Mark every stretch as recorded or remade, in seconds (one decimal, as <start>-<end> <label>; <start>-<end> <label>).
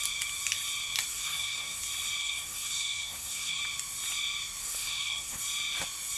0.0-1.1 recorded; 1.1-1.8 remade; 1.8-2.2 recorded; 2.2-3.6 remade; 3.6-4.6 recorded; 4.6-5.4 remade; 5.4-6.2 recorded